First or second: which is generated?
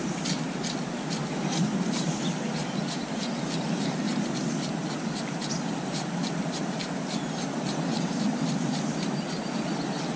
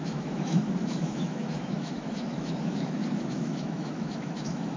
second